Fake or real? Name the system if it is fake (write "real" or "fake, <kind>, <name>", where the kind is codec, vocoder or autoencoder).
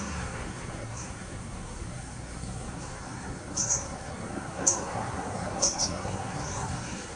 fake, codec, SNAC